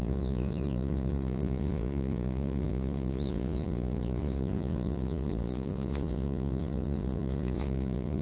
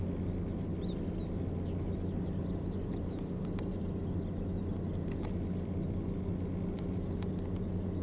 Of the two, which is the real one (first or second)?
second